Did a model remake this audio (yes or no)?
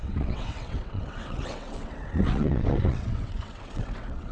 yes